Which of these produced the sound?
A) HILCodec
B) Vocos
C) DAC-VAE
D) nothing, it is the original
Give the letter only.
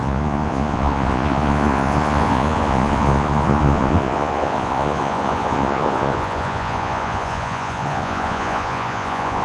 B